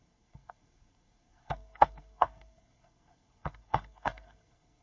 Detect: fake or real fake